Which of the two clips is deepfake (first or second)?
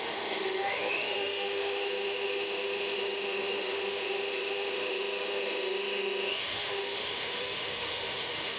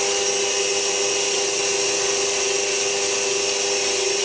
first